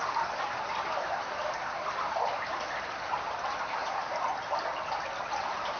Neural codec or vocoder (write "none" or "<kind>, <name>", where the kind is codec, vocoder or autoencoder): none